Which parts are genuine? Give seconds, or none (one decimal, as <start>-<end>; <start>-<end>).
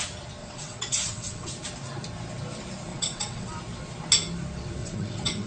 0.0-0.4; 1.5-2.9; 3.6-4.8